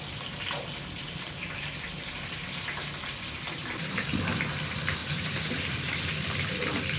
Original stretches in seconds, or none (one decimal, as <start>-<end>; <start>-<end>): 0.0-5.0; 6.1-7.0